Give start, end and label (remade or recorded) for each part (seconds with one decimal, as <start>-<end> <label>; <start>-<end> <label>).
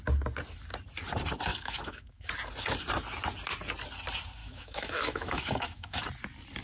0.0-1.5 recorded; 1.5-2.3 remade; 2.3-4.4 recorded; 4.4-6.0 remade; 6.0-6.6 recorded